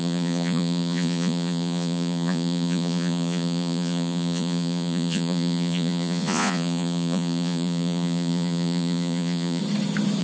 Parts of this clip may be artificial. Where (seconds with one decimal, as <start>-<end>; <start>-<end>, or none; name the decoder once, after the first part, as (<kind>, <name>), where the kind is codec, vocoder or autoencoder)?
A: 0.0-9.6 (vocoder, Vocos)